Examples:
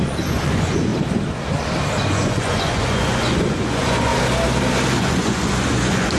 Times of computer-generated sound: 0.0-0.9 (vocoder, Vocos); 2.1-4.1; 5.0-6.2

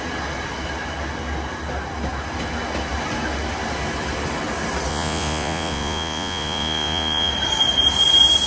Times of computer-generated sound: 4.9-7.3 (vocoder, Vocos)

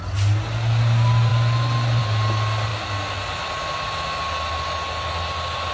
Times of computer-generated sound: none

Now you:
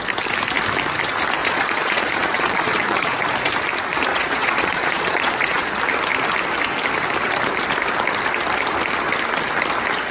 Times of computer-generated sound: 1.4-3.2 (vocoder, Vocos); 4.1-5.7

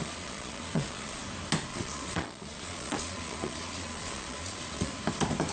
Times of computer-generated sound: 0.0-1.2 (vocoder, Vocos); 1.7-4.9

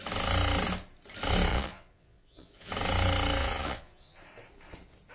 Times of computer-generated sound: 1.5-2.7 (vocoder, Vocos); 3.4-4.2